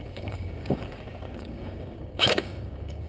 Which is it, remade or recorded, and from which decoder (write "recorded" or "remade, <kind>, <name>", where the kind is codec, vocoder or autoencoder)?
remade, codec, DAC